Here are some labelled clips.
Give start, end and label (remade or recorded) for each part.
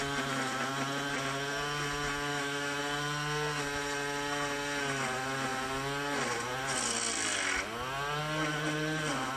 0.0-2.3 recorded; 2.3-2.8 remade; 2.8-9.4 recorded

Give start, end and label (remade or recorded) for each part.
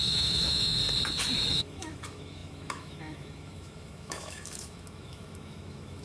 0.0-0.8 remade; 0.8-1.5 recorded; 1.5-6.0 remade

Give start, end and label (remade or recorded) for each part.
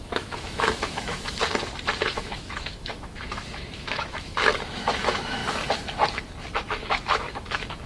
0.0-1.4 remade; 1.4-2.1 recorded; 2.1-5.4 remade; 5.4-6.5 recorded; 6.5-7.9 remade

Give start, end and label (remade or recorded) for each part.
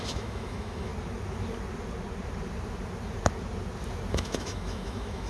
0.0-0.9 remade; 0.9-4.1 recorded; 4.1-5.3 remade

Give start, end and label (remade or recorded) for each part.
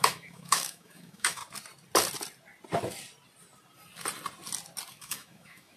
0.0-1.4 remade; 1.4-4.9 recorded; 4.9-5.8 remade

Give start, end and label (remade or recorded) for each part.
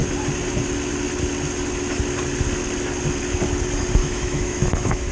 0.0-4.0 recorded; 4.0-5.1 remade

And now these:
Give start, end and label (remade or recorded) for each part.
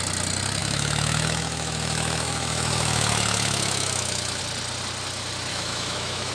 0.0-0.6 recorded; 0.6-4.4 remade; 4.4-5.5 recorded; 5.5-6.3 remade